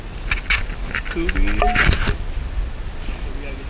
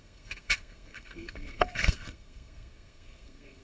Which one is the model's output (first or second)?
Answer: second